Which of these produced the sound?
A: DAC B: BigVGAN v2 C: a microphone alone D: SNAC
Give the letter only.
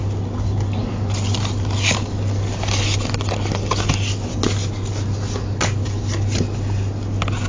C